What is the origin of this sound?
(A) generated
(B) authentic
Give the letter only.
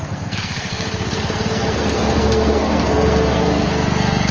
A